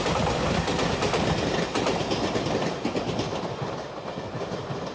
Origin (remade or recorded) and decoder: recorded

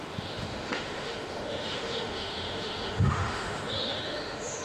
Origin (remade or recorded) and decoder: remade, autoencoder, DAC-VAE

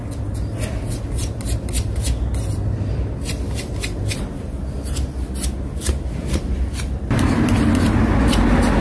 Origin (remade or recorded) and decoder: recorded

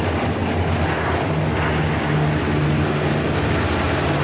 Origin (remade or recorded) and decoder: recorded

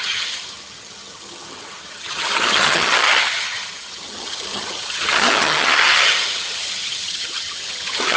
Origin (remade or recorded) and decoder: remade, vocoder, HiFi-GAN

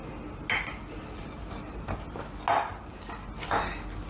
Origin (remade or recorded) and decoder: recorded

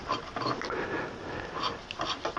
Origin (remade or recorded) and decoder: recorded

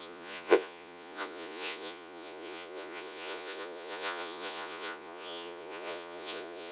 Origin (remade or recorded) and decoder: remade, vocoder, Vocos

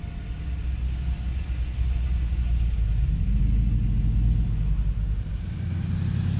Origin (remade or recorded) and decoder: recorded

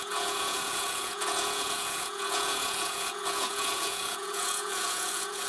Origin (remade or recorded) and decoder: remade, vocoder, Vocos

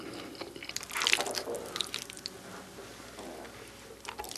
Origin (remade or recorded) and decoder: recorded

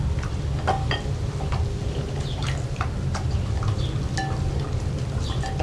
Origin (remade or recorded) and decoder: recorded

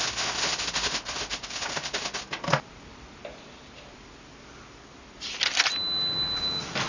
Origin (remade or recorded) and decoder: recorded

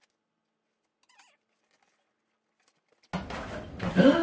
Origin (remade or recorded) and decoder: recorded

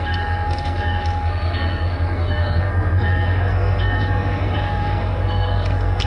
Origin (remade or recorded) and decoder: remade, codec, SNAC